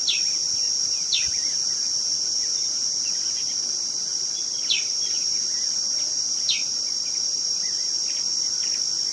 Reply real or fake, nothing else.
real